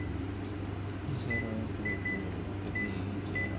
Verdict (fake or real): real